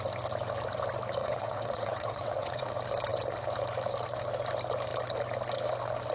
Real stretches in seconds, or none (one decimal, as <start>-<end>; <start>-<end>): 0.0-1.2; 2.7-6.1